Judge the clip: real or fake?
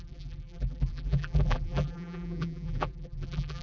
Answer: fake